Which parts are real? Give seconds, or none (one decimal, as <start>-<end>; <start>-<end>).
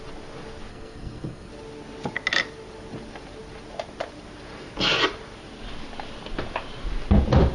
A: 0.0-0.7; 1.5-7.5